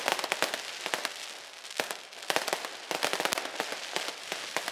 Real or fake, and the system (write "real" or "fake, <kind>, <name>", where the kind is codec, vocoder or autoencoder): real